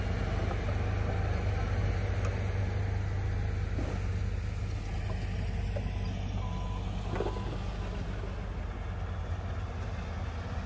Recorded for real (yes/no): yes